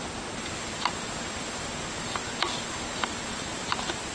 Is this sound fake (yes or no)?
no